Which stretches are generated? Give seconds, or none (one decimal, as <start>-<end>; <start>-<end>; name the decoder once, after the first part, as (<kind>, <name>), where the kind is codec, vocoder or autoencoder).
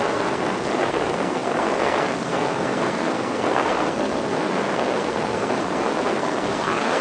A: 0.0-7.0 (codec, SNAC)